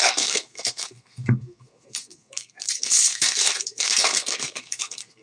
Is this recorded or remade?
remade